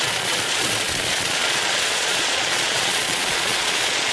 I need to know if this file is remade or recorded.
remade